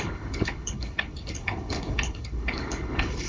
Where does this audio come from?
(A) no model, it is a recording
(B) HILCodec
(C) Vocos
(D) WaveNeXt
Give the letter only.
B